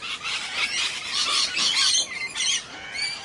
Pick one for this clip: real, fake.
real